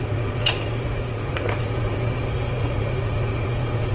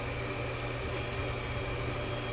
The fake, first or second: first